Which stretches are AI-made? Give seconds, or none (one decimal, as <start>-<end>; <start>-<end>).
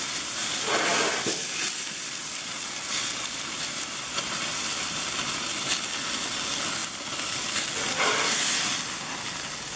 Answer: 0.9-5.4